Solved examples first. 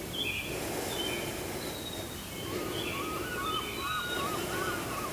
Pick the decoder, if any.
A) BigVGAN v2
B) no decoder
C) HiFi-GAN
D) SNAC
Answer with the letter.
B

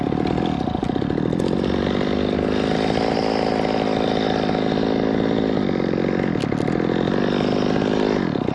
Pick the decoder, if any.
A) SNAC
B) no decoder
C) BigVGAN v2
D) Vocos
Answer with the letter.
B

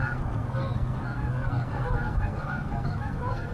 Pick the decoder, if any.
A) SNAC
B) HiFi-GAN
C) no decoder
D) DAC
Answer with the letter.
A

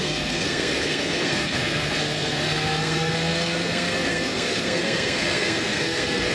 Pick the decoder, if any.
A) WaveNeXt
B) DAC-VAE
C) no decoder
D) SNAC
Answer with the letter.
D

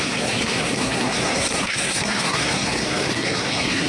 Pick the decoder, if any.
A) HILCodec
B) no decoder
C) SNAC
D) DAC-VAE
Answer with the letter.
C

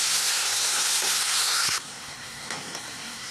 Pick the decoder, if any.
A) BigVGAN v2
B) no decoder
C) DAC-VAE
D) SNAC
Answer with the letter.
D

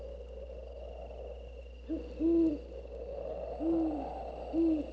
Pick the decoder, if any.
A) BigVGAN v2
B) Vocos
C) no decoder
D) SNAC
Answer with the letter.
C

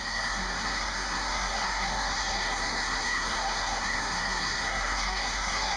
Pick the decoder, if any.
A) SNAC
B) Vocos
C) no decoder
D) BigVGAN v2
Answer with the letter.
A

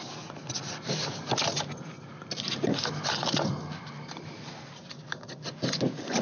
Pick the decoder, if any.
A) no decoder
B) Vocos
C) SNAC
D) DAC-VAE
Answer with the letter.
A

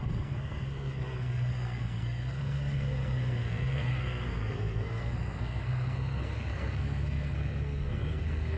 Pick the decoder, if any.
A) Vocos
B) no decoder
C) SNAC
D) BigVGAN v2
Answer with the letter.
C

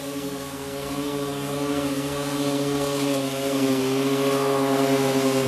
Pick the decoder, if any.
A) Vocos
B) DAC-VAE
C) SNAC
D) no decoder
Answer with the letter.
C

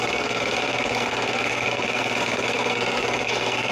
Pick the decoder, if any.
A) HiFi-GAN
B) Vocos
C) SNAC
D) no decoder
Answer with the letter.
C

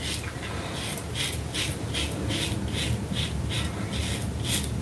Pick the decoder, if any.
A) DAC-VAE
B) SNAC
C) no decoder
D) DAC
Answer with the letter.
C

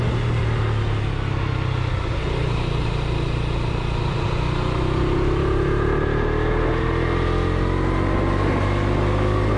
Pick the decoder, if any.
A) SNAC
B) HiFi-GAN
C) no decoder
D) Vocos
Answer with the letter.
C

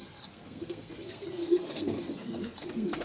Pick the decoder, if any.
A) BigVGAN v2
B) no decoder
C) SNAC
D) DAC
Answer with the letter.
C